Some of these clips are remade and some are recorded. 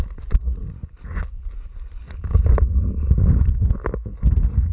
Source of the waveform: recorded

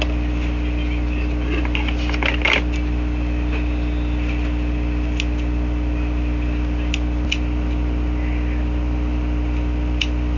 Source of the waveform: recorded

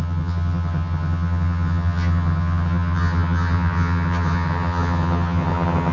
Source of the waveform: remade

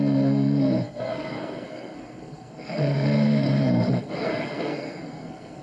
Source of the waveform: remade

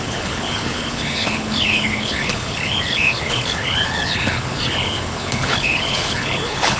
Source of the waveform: remade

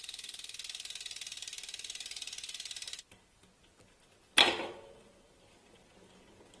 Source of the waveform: recorded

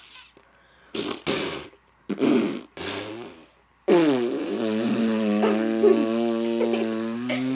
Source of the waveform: recorded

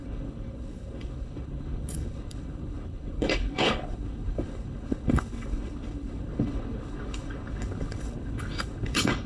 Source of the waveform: remade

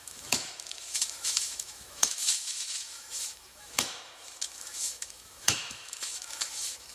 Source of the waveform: remade